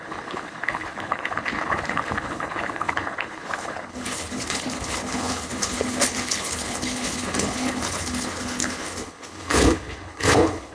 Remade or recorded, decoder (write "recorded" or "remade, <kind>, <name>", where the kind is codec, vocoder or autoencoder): remade, codec, HILCodec